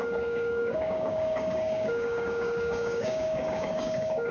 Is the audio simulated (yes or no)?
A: yes